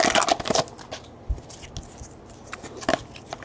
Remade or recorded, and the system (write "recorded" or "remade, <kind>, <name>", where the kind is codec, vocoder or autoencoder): recorded